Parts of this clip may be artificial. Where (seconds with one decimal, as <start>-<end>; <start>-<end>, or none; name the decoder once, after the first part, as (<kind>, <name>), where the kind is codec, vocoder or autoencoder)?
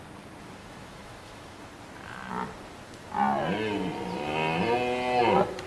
0.6-1.7 (autoencoder, DAC-VAE)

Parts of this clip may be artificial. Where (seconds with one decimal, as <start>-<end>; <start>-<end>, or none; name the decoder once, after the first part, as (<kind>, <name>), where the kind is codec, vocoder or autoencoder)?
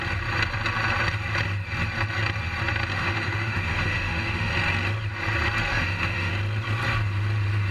2.9-4.5 (autoencoder, DAC-VAE); 5.7-6.3